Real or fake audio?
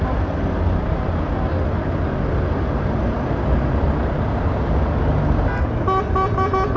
real